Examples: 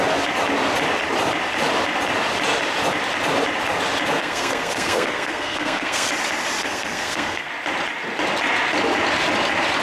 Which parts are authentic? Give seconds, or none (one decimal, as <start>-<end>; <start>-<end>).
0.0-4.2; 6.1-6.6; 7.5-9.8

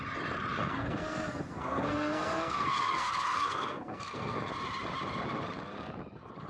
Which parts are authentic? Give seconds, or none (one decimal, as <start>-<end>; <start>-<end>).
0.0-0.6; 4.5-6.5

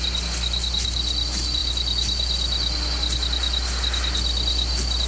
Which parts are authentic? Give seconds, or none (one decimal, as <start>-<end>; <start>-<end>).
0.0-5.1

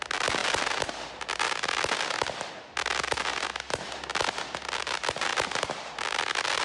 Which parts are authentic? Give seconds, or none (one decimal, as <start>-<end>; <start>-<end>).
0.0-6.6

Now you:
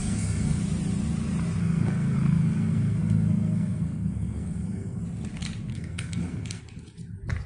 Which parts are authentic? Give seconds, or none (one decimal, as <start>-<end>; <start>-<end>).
0.6-1.6; 5.0-5.7; 6.6-7.5

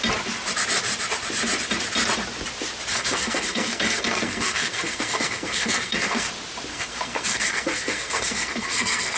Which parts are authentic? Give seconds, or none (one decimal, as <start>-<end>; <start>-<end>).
0.0-2.9; 6.3-6.7

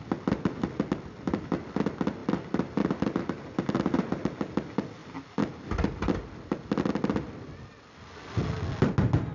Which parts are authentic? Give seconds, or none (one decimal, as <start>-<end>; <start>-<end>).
0.0-9.3

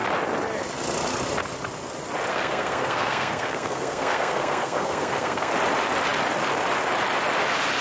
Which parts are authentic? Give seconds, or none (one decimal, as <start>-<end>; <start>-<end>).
0.0-2.3; 5.5-7.8